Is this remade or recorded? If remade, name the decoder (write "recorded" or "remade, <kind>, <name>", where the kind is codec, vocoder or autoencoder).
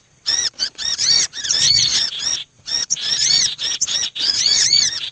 remade, vocoder, Vocos